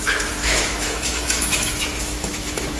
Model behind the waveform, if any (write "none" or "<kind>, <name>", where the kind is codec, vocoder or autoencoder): autoencoder, DAC-VAE